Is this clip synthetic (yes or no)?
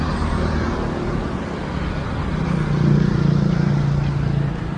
no